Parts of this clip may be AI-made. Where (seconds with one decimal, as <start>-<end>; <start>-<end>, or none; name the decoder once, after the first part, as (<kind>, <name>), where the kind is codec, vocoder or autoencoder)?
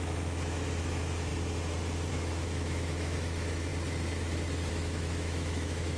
0.0-1.3 (autoencoder, DAC-VAE); 2.1-3.7; 4.7-6.0